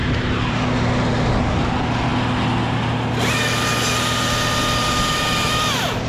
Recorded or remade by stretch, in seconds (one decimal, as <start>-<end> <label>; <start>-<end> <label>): 0.0-6.1 recorded